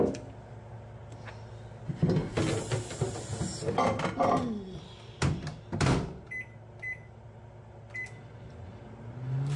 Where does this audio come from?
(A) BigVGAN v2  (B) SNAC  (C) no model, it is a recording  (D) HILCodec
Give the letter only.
C